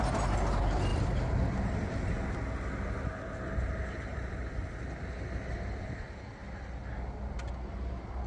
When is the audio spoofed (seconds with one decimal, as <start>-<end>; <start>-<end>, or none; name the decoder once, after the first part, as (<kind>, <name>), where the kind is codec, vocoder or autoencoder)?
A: 0.9-2.0 (vocoder, BigVGAN v2); 4.1-4.8